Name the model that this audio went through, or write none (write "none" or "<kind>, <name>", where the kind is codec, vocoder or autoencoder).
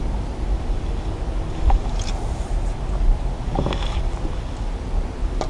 none